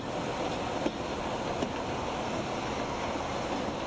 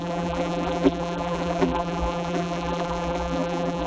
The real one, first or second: first